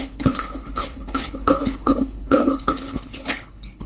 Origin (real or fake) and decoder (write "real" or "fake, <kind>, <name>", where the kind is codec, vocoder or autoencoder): fake, codec, HILCodec